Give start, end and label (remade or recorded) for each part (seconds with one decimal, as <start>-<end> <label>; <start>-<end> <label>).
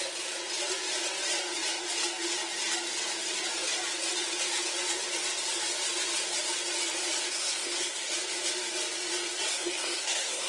0.0-7.3 recorded; 7.3-8.1 remade; 8.1-9.5 recorded; 9.5-10.5 remade